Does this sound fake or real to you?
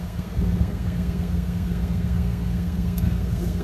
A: fake